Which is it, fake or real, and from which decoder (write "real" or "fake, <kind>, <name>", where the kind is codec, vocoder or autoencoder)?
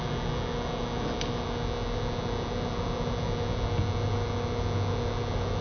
real